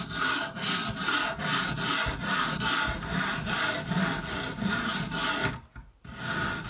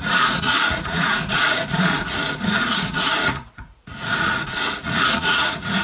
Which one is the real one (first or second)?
first